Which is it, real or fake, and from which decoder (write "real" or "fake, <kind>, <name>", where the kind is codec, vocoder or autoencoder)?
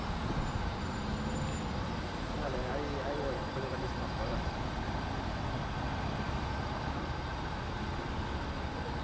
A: real